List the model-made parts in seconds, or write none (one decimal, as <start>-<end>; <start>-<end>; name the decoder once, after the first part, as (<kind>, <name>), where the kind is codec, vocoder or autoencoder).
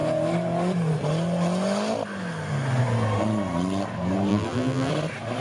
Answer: 4.3-4.9 (vocoder, BigVGAN v2)